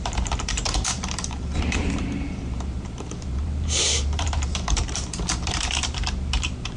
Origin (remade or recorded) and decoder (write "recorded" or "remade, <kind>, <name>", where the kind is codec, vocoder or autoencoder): remade, vocoder, BigVGAN v2